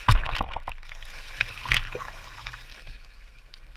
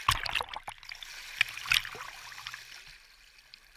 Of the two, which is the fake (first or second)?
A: first